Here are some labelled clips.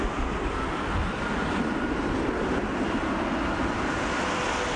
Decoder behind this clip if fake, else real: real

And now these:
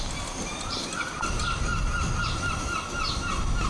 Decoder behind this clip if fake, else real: real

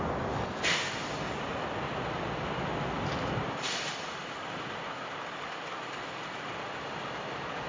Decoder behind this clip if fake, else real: fake, vocoder, BigVGAN v2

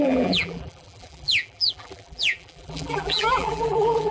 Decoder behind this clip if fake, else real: fake, vocoder, BigVGAN v2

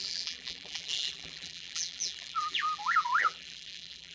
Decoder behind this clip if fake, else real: fake, vocoder, BigVGAN v2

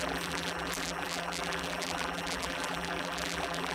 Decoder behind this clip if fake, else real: fake, vocoder, BigVGAN v2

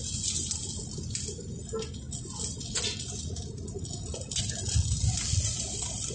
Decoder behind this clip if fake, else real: real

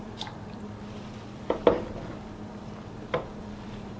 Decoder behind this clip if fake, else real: fake, vocoder, BigVGAN v2